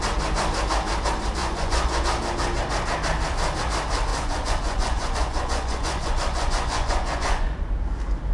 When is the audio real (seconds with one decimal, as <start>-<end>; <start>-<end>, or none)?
0.0-1.4; 2.0-4.1; 7.7-8.3